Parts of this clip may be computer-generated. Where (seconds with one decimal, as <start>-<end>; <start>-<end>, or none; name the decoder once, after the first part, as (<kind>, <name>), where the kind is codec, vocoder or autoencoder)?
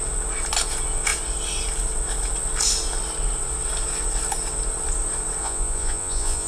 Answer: 5.4-6.5 (vocoder, Vocos)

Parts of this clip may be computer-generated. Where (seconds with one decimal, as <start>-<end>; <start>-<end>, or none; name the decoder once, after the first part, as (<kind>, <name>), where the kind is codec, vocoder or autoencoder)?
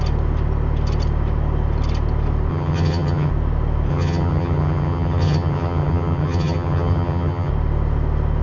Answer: 2.5-3.3 (vocoder, HiFi-GAN); 3.9-7.5